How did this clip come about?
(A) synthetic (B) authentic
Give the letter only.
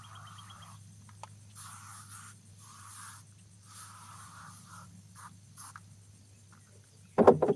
B